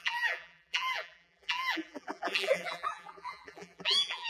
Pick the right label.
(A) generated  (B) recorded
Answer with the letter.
A